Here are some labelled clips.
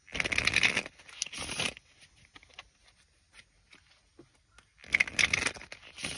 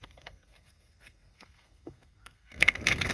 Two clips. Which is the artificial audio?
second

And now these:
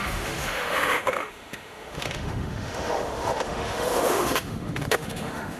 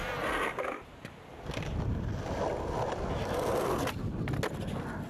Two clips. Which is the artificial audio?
first